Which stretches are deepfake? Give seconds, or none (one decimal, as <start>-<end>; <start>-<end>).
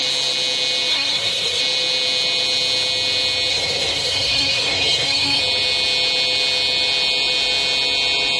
0.9-1.6; 3.5-5.4